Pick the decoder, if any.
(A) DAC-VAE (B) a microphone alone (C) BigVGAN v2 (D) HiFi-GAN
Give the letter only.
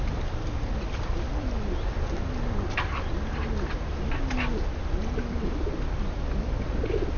B